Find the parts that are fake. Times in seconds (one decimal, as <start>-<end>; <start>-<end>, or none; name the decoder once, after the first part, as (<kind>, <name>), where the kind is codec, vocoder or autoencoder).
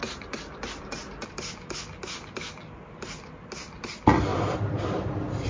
4.3-5.5 (vocoder, BigVGAN v2)